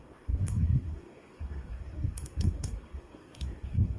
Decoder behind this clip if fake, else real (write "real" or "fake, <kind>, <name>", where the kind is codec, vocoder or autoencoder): fake, codec, SNAC